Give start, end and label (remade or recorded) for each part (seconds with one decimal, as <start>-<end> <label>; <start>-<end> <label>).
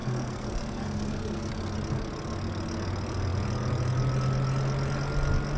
0.0-1.5 remade; 1.5-5.6 recorded